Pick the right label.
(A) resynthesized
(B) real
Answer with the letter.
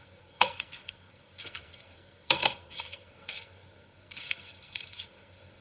A